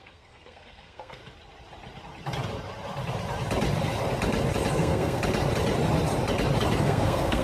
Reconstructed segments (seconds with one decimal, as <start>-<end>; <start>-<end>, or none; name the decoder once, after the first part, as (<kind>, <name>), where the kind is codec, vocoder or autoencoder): 0.0-1.2 (codec, SNAC); 4.7-5.2; 6.8-7.4